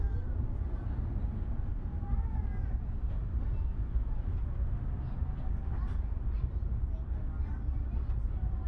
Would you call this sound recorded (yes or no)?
yes